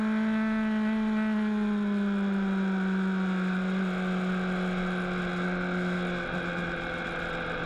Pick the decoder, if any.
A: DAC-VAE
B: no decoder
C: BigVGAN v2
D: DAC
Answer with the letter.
B